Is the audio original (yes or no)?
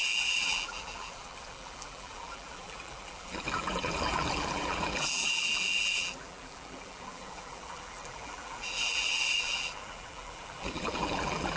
no